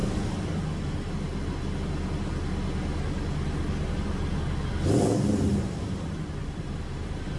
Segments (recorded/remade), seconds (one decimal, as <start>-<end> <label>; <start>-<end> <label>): 0.0-3.9 recorded; 3.9-4.3 remade; 4.3-5.5 recorded; 5.5-7.4 remade